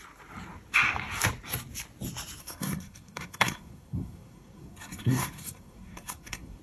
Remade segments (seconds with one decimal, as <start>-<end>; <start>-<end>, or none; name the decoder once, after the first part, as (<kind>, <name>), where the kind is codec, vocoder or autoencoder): 2.4-6.6 (codec, SNAC)